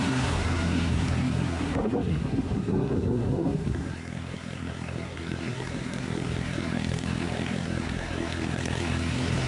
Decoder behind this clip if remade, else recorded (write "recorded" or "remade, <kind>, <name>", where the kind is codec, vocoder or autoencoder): remade, codec, SNAC